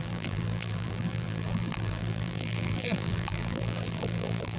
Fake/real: fake